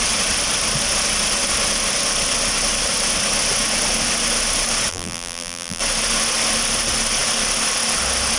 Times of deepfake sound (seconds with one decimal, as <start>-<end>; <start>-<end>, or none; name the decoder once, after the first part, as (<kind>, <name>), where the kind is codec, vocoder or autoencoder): 4.9-5.8 (vocoder, BigVGAN v2)